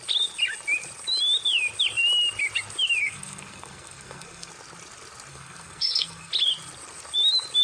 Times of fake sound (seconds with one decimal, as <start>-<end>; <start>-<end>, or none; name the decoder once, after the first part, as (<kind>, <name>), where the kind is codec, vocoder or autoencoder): 3.0-4.5 (codec, SNAC); 5.3-6.3